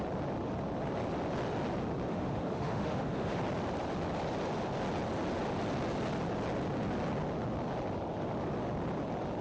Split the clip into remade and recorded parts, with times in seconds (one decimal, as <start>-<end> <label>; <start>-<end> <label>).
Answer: 0.0-2.1 recorded; 2.1-3.4 remade; 3.4-9.4 recorded